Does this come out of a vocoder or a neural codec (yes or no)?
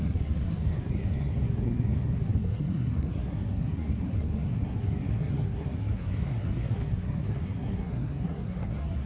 yes